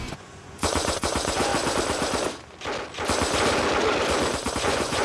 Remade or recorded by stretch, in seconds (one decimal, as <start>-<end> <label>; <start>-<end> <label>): 0.0-1.5 remade; 1.5-4.5 recorded; 4.5-5.0 remade